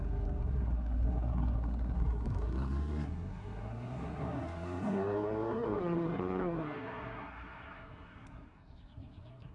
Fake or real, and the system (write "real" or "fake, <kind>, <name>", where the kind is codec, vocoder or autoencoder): fake, codec, SNAC